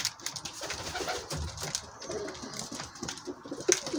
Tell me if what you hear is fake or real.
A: real